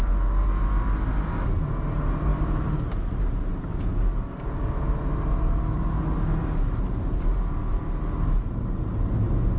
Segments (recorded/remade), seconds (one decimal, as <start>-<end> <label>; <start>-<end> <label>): 0.0-9.6 recorded